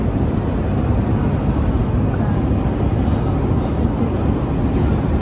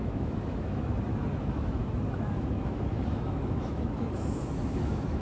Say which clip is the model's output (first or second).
second